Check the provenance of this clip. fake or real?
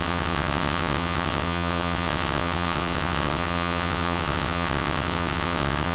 fake